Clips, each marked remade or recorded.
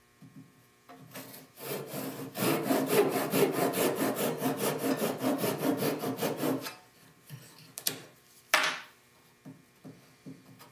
recorded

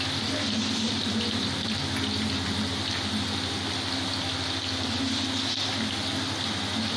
recorded